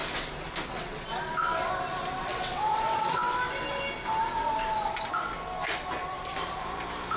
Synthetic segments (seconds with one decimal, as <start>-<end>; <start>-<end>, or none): 0.7-1.1; 2.2-3.2